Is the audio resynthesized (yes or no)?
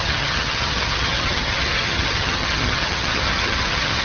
yes